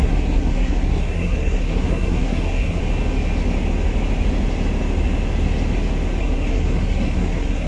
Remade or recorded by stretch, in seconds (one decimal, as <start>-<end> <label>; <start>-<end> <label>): 0.0-2.8 remade; 2.8-6.2 recorded; 6.2-7.7 remade